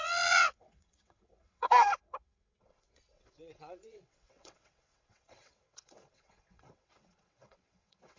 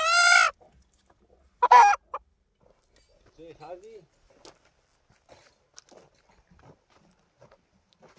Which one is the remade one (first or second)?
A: first